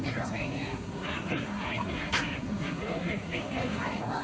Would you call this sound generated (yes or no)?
yes